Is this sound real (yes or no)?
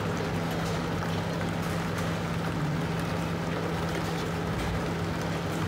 yes